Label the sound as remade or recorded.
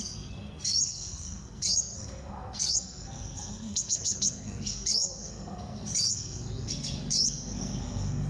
remade